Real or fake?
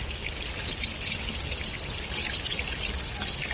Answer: real